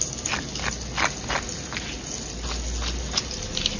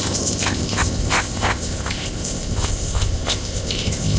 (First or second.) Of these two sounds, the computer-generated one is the second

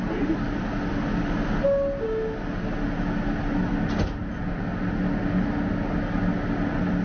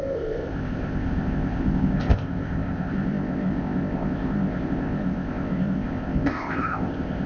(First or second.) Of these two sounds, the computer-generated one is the second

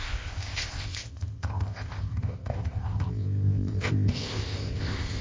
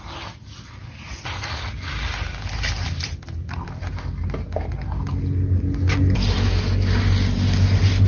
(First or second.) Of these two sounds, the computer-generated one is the first